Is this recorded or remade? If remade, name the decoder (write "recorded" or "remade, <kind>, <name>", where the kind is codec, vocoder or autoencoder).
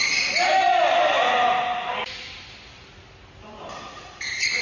recorded